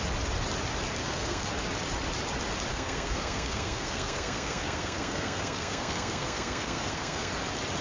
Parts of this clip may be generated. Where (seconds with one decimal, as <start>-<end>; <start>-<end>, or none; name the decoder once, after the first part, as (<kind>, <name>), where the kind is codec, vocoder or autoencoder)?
1.0-1.5 (codec, SNAC); 2.7-7.3